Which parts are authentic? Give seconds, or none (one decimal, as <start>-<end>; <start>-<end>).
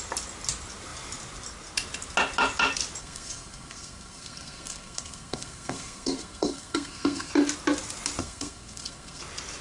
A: 0.0-3.0; 7.3-8.2; 9.2-9.6